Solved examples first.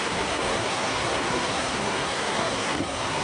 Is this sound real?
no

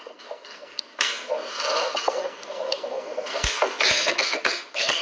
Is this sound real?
no